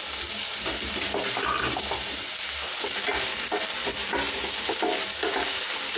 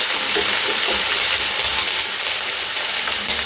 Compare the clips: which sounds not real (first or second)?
second